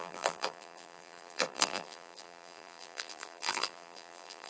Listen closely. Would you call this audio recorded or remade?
remade